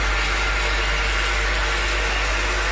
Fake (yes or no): yes